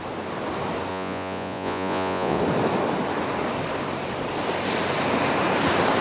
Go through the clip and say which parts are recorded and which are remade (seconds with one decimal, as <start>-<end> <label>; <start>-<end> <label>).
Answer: 0.0-0.9 recorded; 0.9-2.4 remade; 2.4-6.0 recorded